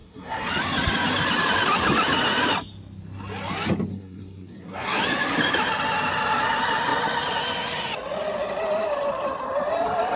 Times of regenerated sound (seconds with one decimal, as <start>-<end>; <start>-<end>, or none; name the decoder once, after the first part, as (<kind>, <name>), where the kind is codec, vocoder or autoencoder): 0.0-0.5 (codec, SNAC); 3.9-5.0